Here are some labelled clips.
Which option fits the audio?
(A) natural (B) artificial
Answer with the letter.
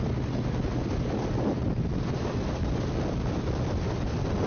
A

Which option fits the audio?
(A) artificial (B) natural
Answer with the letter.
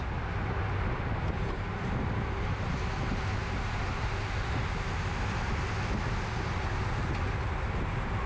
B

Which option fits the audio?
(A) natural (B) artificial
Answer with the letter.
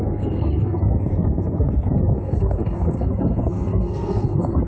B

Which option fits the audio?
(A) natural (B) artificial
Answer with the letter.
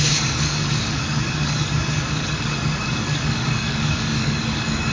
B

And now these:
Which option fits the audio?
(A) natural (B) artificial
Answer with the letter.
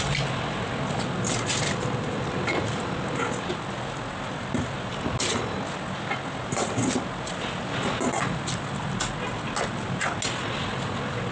A